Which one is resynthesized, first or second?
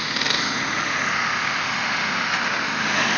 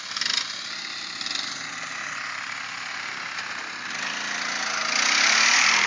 first